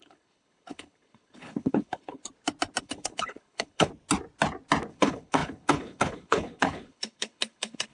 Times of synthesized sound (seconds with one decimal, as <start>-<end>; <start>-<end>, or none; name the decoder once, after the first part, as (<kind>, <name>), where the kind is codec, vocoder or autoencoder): 0.0-2.2 (codec, HILCodec); 2.8-3.9; 4.9-7.9